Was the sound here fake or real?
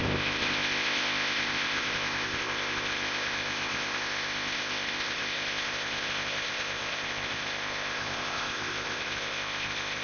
fake